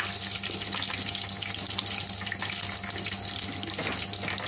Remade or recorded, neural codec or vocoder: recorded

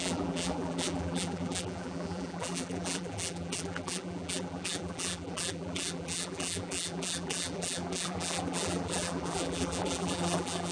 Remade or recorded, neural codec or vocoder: remade, vocoder, BigVGAN v2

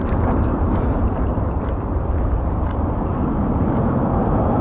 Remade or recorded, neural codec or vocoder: remade, vocoder, BigVGAN v2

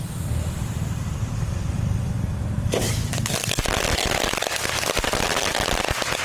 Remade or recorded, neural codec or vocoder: remade, vocoder, BigVGAN v2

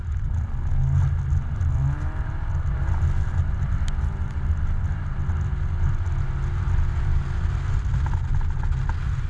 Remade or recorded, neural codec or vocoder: recorded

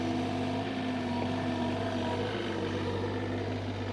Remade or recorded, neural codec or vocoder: recorded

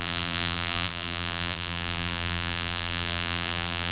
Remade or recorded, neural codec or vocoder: remade, vocoder, BigVGAN v2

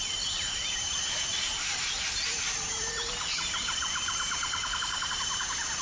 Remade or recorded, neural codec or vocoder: remade, vocoder, BigVGAN v2